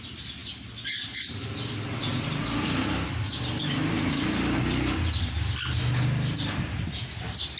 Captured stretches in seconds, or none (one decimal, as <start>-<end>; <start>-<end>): 0.0-2.1; 5.2-7.6